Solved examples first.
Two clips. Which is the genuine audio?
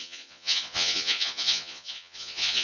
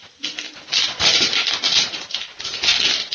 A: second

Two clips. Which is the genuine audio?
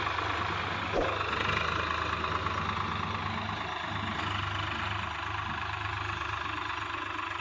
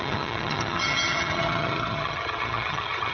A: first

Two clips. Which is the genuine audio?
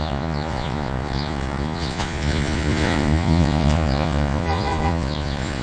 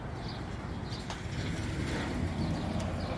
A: second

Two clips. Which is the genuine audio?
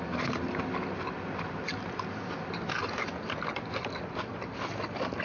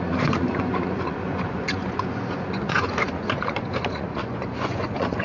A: first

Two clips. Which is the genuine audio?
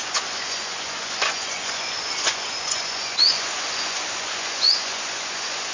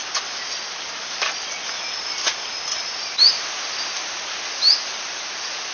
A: second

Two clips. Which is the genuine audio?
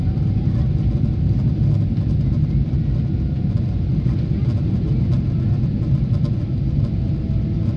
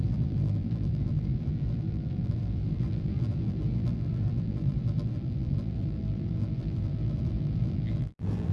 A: first